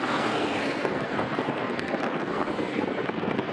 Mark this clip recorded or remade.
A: remade